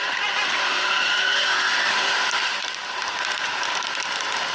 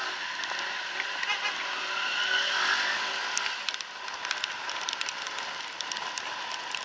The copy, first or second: first